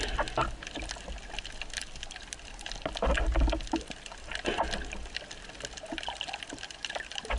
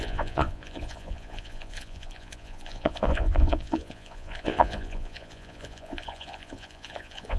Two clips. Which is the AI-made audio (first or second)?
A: second